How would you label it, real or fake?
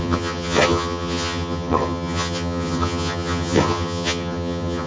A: fake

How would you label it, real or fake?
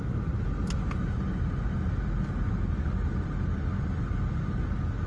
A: real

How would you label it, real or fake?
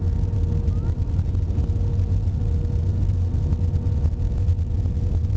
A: real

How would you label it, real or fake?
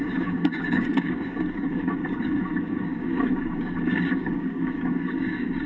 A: fake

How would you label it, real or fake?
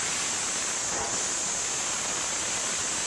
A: real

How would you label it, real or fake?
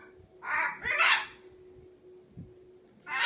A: real